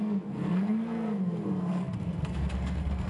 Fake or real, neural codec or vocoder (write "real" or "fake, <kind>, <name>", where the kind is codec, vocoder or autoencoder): fake, codec, SNAC